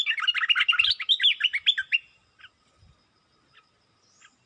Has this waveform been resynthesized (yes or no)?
no